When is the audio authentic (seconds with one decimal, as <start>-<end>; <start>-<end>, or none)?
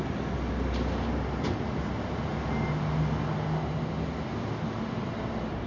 0.0-5.7